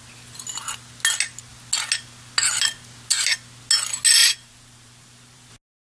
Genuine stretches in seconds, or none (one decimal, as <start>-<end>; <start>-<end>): 0.0-4.2; 5.5-5.9